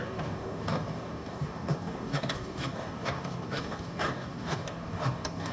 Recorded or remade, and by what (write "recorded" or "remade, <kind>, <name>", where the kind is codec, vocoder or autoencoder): remade, codec, DAC